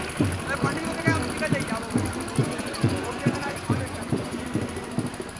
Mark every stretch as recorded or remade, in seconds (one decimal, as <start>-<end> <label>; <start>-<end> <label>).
0.0-2.4 recorded; 2.4-4.4 remade; 4.4-5.4 recorded